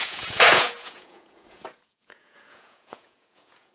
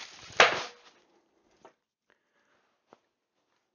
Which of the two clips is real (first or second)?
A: second